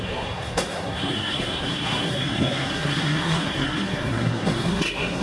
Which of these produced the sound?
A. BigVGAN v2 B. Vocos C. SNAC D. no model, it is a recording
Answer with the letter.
C